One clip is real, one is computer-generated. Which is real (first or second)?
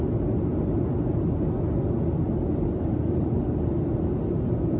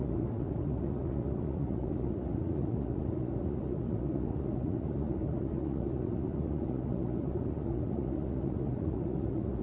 first